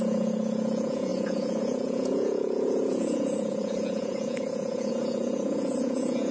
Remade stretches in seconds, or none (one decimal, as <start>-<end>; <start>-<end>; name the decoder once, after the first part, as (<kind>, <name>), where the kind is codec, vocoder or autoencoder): 0.0-6.3 (vocoder, Vocos)